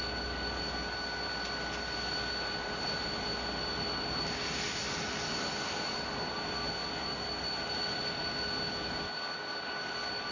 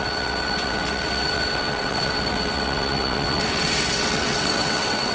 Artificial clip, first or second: second